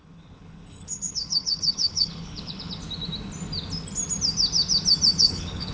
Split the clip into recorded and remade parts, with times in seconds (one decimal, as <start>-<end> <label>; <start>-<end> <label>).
0.0-2.8 remade; 2.8-5.2 recorded; 5.2-5.7 remade